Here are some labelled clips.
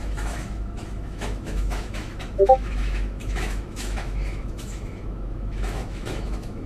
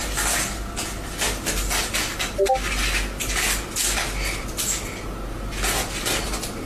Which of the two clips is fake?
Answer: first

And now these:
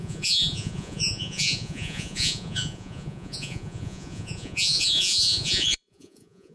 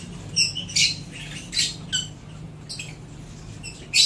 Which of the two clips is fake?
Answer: first